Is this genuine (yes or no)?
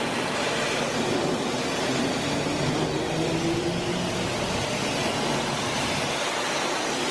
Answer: yes